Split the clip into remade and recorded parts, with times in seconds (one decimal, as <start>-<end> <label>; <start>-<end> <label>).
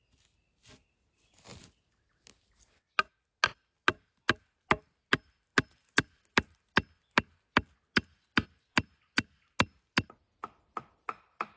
0.0-11.6 recorded